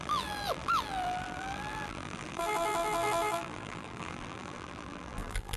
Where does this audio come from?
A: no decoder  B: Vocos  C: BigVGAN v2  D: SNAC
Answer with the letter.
C